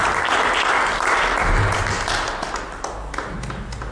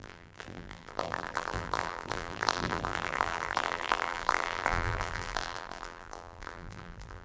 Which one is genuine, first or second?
first